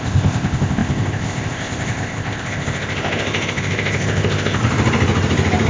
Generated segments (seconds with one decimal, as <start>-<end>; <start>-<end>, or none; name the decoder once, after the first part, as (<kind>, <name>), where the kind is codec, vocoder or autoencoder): 0.0-4.6 (codec, ZipCodec)